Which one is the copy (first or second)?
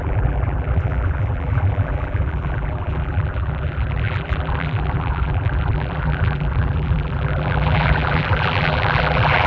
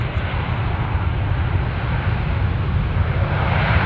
first